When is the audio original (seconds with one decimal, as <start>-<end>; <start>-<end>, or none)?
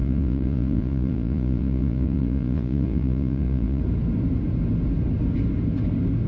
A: 3.8-6.3